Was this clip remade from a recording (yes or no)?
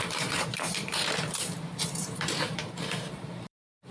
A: yes